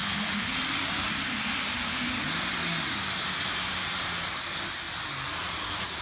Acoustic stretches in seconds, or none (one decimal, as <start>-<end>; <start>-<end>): 0.5-6.0